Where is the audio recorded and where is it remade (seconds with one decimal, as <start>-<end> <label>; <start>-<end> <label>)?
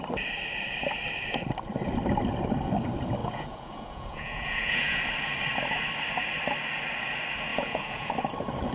0.0-3.2 recorded; 3.2-5.0 remade; 5.0-7.5 recorded; 7.5-8.1 remade; 8.1-8.7 recorded